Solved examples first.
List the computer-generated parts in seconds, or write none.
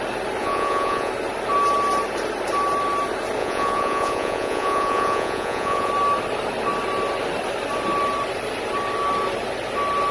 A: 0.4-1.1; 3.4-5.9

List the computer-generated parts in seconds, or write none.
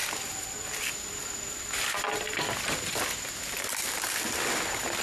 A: none